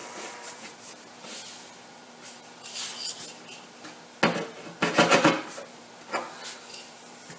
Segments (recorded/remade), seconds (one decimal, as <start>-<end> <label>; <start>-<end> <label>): 0.0-2.1 remade; 2.1-7.4 recorded